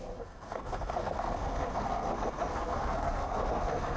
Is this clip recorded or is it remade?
remade